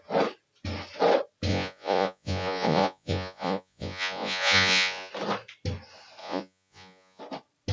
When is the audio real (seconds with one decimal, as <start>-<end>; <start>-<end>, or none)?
0.0-1.5; 5.1-6.2; 7.2-7.7